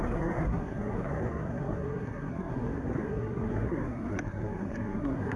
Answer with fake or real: fake